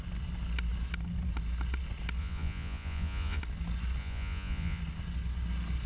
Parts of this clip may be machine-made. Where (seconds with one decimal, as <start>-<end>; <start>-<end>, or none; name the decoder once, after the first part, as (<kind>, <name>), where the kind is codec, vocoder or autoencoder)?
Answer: 2.2-3.4 (vocoder, Vocos); 4.0-4.8